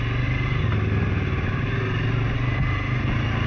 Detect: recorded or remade recorded